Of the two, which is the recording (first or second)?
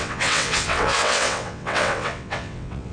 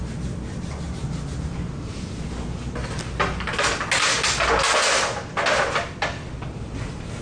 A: second